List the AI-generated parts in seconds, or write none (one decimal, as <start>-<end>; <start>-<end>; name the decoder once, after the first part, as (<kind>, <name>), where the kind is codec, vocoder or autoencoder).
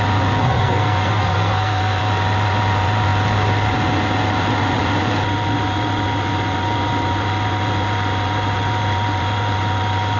0.4-2.0 (codec, SNAC)